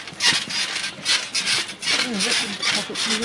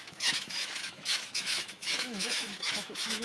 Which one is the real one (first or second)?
first